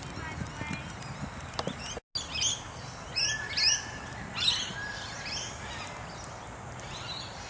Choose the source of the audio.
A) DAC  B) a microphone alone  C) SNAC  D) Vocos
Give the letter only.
B